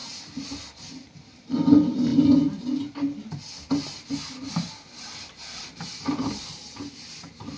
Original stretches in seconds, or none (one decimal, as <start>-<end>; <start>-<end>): 0.0-7.6